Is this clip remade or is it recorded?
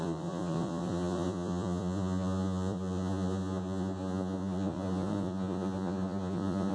remade